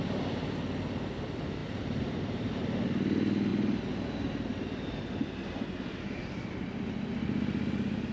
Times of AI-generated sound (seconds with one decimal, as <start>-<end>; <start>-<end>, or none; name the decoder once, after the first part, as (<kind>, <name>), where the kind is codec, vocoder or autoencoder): 1.6-2.6 (vocoder, BigVGAN v2)